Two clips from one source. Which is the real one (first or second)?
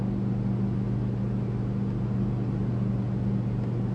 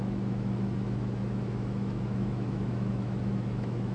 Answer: first